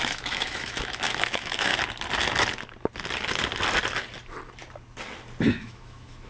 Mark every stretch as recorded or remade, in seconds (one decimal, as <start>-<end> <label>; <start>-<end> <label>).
0.0-1.7 remade; 1.7-5.5 recorded; 5.5-6.3 remade